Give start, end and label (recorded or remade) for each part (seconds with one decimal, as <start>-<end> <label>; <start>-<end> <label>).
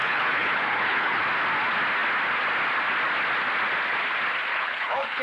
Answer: 0.0-1.2 remade; 1.2-4.5 recorded; 4.5-5.2 remade